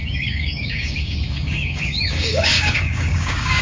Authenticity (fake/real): fake